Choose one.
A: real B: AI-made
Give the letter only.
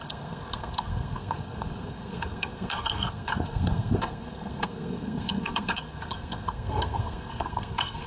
B